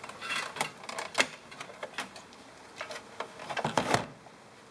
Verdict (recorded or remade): recorded